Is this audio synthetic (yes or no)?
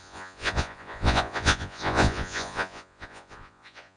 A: yes